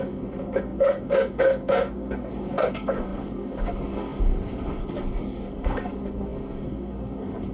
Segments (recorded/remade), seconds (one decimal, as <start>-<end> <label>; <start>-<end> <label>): 0.0-7.5 remade